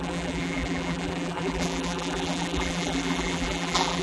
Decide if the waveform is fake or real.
fake